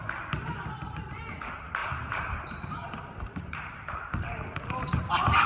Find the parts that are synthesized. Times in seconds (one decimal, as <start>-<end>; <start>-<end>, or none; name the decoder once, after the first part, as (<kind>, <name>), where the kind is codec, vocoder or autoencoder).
1.8-5.1 (vocoder, BigVGAN v2)